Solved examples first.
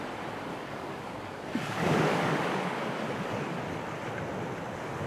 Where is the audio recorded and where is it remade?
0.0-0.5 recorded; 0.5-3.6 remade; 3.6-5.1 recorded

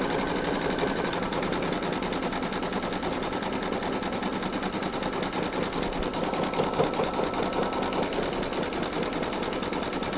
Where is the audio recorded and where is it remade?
0.0-10.2 recorded

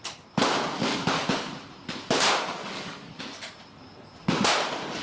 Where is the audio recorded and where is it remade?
0.0-2.6 recorded; 2.6-3.2 remade; 3.2-5.0 recorded

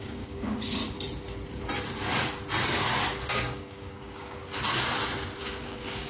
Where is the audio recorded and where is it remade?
0.0-0.8 remade; 0.8-3.3 recorded; 3.3-4.4 remade; 4.4-5.4 recorded; 5.4-6.1 remade

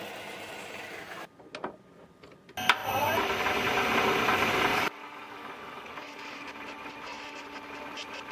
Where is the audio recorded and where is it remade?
0.0-4.7 recorded; 4.7-6.5 remade; 6.5-8.3 recorded

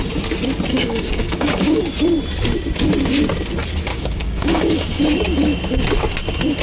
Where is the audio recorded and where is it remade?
0.0-0.7 recorded; 0.7-1.8 remade; 1.8-3.9 recorded; 3.9-5.0 remade; 5.0-6.6 recorded

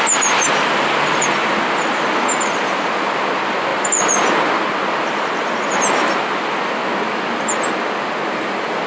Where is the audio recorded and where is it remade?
0.0-8.9 recorded